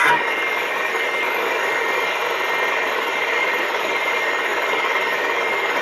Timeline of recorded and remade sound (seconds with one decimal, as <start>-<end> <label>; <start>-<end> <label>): 0.0-2.2 remade; 2.2-2.7 recorded; 2.7-5.8 remade